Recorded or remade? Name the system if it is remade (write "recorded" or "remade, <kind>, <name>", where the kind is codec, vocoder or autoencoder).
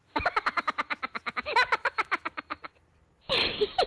recorded